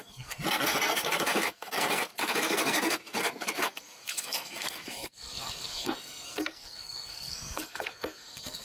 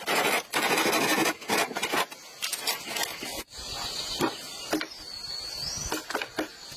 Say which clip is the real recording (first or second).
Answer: second